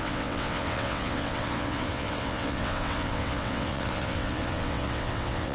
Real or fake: fake